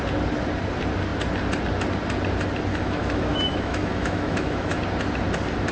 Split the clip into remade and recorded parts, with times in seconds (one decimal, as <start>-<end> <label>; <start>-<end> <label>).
0.0-2.7 recorded; 2.7-4.8 remade; 4.8-5.7 recorded